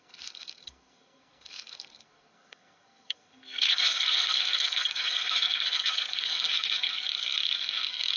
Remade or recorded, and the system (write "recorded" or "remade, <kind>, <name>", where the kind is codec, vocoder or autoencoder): remade, codec, SNAC